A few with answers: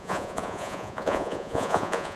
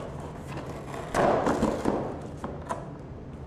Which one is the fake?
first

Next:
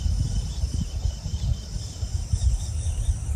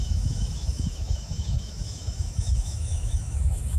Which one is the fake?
second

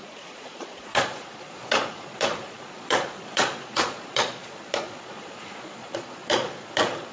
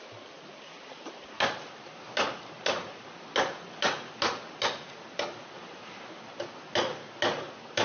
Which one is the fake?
first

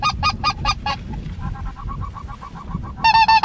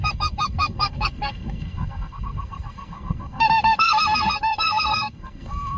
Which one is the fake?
second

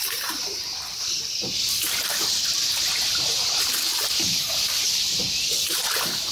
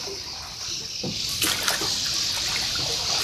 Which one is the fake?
first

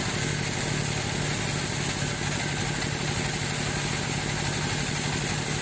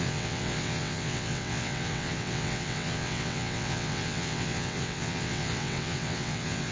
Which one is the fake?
second